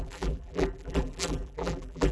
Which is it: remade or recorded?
remade